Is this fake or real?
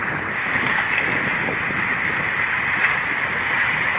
real